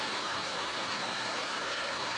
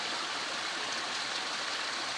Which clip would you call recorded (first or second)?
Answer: second